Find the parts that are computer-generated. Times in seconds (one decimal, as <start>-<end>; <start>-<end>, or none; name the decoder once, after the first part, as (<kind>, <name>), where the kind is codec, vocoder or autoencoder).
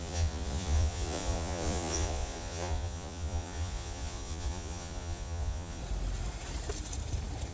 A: 0.0-5.8 (vocoder, Vocos)